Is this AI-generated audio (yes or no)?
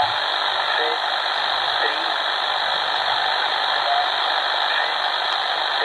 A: no